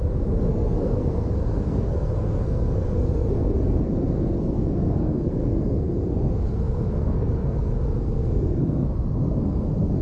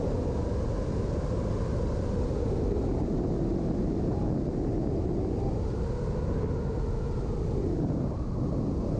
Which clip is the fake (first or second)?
first